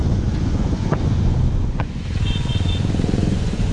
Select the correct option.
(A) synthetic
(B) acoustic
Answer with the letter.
A